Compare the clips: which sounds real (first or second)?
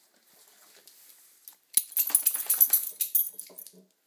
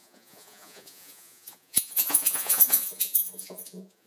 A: first